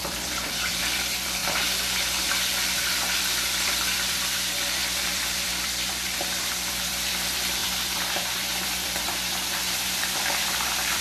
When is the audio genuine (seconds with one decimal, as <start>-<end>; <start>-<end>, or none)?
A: 1.4-2.3

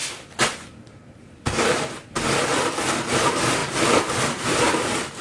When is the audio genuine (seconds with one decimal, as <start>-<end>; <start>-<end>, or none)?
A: 0.0-0.6; 2.5-3.1; 3.6-4.3

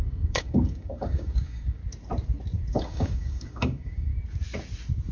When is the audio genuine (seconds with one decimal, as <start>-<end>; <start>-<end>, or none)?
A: 1.8-2.7; 4.1-5.1

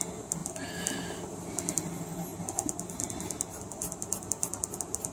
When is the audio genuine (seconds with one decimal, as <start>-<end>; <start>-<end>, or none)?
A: 0.0-5.1

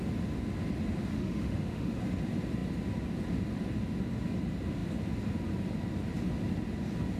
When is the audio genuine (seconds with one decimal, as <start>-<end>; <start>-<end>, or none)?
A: 0.0-1.1; 2.0-7.2